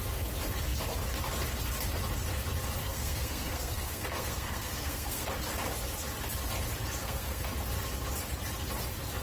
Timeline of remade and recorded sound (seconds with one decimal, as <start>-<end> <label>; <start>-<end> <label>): 0.0-2.8 recorded; 2.8-5.3 remade; 5.3-7.0 recorded; 7.0-7.5 remade; 7.5-9.2 recorded